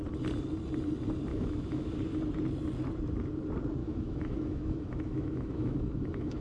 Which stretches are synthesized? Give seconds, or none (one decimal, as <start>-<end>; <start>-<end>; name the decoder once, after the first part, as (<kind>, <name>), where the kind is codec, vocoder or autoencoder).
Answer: 1.3-1.9 (autoencoder, DAC-VAE); 3.8-6.4